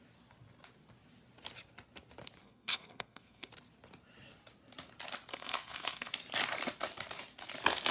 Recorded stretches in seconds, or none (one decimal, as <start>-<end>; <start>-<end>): 0.0-2.4; 3.5-5.3; 6.1-7.9